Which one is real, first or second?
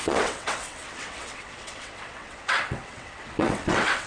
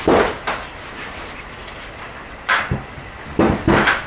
second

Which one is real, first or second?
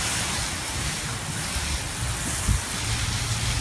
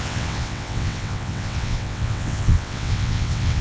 first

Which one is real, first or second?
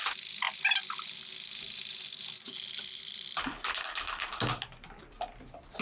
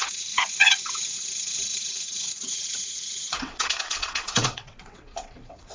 first